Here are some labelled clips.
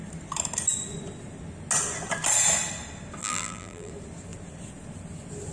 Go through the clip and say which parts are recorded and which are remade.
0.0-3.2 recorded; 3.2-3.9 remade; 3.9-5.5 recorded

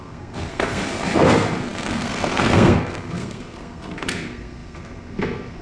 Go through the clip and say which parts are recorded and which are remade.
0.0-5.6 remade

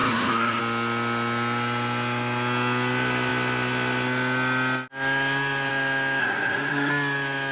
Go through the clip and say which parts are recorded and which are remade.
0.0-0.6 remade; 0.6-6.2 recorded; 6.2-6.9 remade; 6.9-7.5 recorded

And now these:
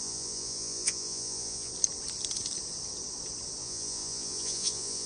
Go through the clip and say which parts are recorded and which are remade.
0.0-1.7 remade; 1.7-3.6 recorded; 3.6-5.1 remade

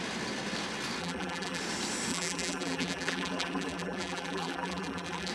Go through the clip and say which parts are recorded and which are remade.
0.0-1.0 recorded; 1.0-1.6 remade; 1.6-2.1 recorded; 2.1-5.3 remade

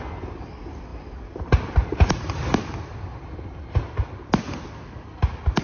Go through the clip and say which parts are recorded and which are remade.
0.0-5.6 recorded

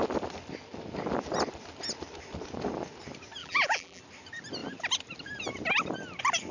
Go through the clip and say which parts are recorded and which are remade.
0.0-3.4 recorded; 3.4-4.0 remade; 4.0-6.5 recorded

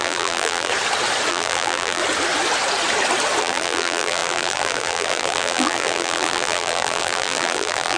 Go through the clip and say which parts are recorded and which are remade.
0.0-0.7 remade; 0.7-1.3 recorded; 1.3-2.0 remade; 2.0-3.4 recorded; 3.4-8.0 remade